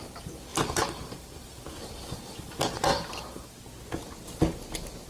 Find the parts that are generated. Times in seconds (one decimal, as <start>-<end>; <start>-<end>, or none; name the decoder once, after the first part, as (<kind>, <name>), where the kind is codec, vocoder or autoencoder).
0.5-3.5 (vocoder, BigVGAN v2)